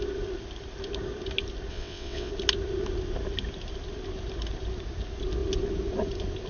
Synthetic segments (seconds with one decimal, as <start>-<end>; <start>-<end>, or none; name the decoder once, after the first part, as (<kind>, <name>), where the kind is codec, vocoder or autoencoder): 1.7-2.3 (vocoder, WaveNeXt)